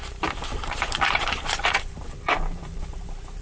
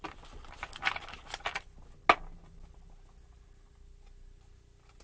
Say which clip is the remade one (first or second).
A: first